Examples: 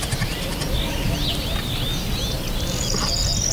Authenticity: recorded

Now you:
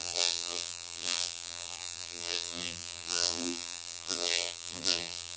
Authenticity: remade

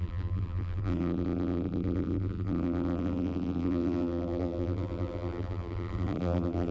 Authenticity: remade